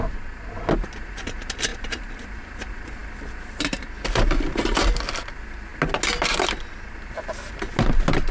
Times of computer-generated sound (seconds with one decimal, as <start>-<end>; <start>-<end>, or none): 1.7-2.4; 3.0-3.8